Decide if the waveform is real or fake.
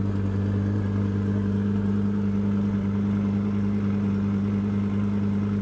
real